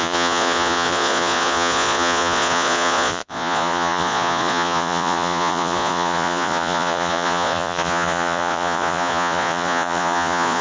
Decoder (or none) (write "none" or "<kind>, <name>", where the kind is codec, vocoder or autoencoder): vocoder, Vocos